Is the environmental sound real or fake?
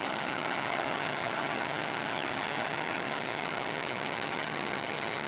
fake